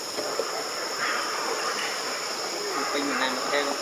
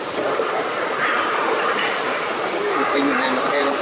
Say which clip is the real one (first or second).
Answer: first